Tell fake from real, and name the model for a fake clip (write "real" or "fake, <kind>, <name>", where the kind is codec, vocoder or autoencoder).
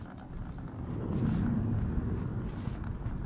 real